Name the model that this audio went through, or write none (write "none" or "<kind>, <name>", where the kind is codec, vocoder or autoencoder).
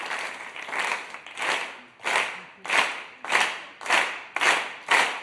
none